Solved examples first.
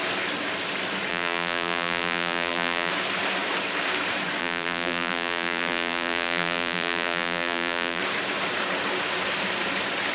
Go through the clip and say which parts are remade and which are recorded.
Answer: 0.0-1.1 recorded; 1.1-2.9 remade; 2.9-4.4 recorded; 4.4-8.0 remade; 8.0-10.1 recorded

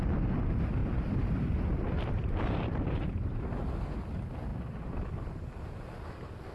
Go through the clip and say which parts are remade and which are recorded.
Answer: 0.0-0.8 recorded; 0.8-3.7 remade; 3.7-6.5 recorded

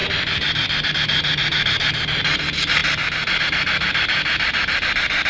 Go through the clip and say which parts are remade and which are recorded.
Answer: 0.0-0.9 remade; 0.9-5.3 recorded